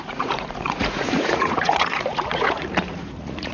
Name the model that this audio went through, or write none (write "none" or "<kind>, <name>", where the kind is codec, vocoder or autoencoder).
vocoder, Vocos